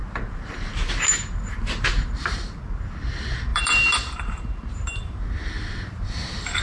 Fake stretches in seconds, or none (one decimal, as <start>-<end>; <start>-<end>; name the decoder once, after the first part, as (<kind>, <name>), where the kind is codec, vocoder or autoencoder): 0.0-2.6 (vocoder, BigVGAN v2); 3.5-5.2